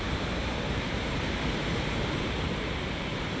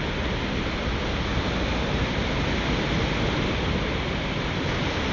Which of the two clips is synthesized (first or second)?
first